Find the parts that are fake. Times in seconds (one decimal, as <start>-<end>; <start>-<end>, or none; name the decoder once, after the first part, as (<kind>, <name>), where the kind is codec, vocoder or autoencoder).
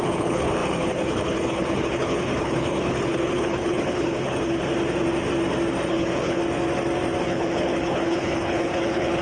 0.0-4.7 (codec, HILCodec); 5.9-6.4; 7.2-9.2